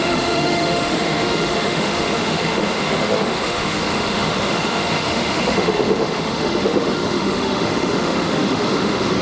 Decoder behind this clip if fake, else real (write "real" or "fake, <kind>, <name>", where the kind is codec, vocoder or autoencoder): fake, autoencoder, DAC-VAE